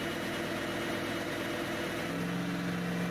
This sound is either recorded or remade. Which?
recorded